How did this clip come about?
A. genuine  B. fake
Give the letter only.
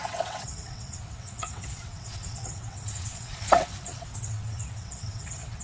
B